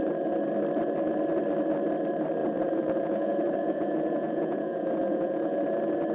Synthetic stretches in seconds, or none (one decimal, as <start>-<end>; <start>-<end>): 2.4-5.6